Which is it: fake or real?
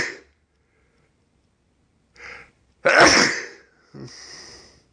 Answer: real